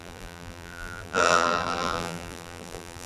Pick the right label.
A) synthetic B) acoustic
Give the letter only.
A